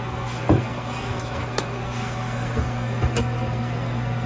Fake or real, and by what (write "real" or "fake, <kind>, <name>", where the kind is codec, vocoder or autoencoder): fake, codec, SNAC